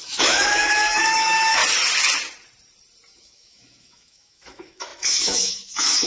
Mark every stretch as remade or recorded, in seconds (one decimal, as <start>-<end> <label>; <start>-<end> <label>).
0.0-1.6 remade; 1.6-3.1 recorded; 3.1-6.1 remade